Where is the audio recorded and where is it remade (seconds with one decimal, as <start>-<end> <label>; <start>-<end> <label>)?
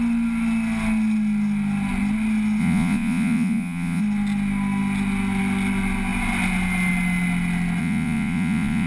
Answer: 0.0-2.6 recorded; 2.6-4.0 remade; 4.0-7.8 recorded; 7.8-8.9 remade